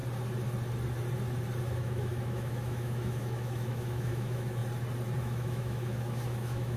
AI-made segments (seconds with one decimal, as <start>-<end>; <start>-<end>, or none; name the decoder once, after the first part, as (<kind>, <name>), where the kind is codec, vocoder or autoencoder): 1.6-4.6 (autoencoder, DAC-VAE); 5.2-6.8